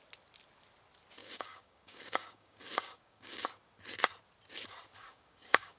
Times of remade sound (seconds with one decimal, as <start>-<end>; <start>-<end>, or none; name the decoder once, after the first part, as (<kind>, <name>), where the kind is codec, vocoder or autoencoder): 1.2-3.5 (codec, DAC); 5.0-5.8